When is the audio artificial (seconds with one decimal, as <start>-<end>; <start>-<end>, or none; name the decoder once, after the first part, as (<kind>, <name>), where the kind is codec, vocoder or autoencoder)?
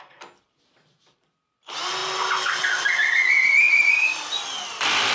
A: none